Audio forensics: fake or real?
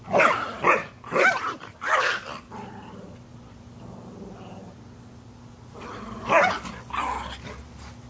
real